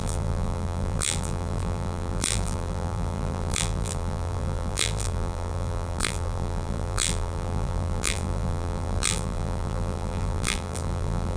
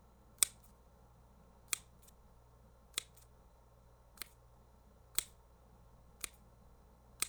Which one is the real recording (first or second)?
second